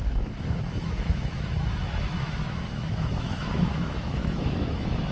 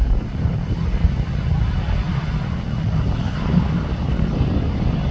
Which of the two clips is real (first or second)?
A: second